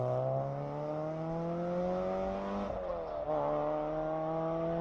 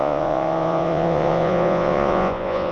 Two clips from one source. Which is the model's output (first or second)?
second